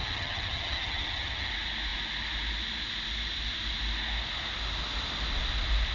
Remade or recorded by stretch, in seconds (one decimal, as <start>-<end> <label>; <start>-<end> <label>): 0.0-1.5 remade; 1.5-5.9 recorded